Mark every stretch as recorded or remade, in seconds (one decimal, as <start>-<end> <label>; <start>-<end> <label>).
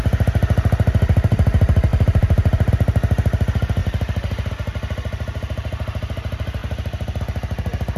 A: 0.0-1.9 recorded; 1.9-2.7 remade; 2.7-3.8 recorded; 3.8-4.5 remade; 4.5-8.0 recorded